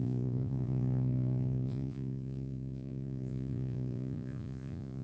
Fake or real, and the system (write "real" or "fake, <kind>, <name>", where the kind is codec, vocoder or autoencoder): fake, vocoder, Vocos